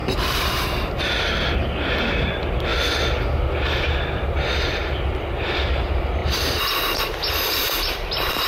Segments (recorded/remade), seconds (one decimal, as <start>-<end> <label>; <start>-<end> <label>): 0.0-1.0 remade; 1.0-6.2 recorded; 6.2-8.5 remade